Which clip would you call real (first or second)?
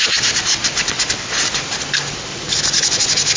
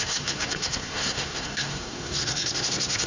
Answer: first